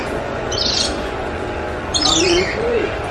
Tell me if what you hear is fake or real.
fake